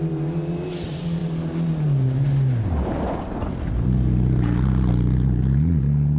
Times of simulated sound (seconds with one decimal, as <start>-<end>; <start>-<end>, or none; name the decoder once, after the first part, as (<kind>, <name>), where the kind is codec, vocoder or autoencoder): none